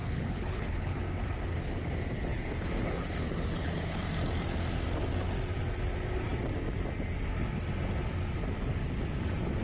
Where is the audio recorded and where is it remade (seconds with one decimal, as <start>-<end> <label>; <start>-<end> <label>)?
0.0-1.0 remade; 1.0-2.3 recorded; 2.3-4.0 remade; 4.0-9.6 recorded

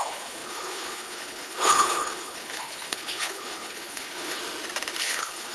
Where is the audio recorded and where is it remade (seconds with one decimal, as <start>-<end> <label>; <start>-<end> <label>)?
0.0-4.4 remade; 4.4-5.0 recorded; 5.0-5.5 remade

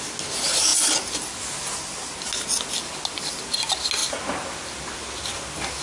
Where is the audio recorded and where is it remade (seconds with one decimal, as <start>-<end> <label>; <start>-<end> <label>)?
0.0-5.8 recorded

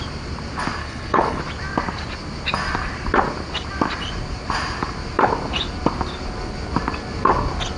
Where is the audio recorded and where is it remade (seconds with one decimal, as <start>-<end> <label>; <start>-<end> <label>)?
0.0-0.8 recorded; 0.8-1.4 remade; 1.4-7.8 recorded